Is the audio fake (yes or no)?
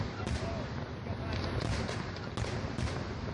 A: no